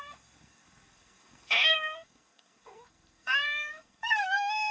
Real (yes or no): no